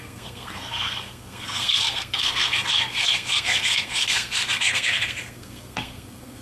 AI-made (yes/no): yes